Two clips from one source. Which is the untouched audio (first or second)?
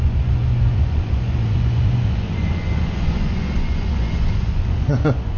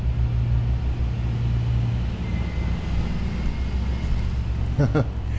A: second